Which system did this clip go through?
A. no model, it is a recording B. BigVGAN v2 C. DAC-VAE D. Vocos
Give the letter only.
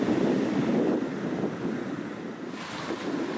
A